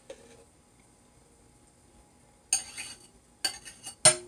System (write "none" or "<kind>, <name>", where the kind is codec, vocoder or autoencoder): none